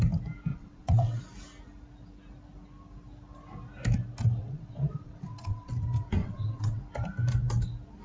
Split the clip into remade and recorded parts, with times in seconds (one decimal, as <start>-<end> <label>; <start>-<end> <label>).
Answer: 0.0-0.5 recorded; 0.5-1.2 remade; 1.2-4.4 recorded; 4.4-5.7 remade; 5.7-6.2 recorded; 6.2-6.8 remade; 6.8-8.0 recorded